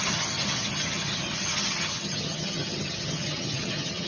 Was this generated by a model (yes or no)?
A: yes